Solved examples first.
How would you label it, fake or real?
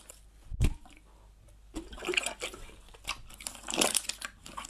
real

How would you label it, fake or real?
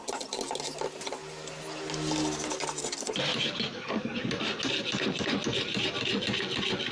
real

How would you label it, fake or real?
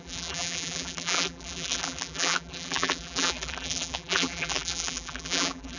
fake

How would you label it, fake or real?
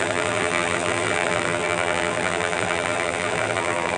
fake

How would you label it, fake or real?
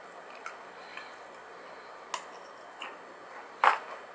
real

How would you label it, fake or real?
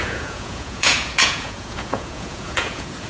fake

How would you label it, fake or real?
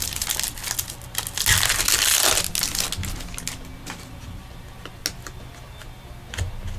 real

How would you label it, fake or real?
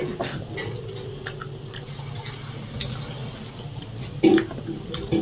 real